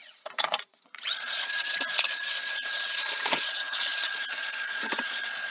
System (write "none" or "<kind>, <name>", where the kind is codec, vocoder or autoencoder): vocoder, Vocos